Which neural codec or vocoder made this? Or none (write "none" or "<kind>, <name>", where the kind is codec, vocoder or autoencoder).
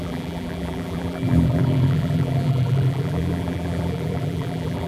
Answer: vocoder, BigVGAN v2